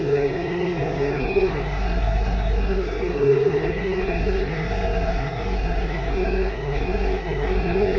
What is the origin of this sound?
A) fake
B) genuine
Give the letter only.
A